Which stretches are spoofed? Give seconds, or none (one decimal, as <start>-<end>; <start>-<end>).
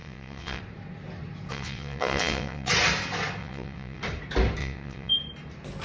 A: 0.0-0.6; 1.5-2.7; 3.4-4.0; 4.6-5.1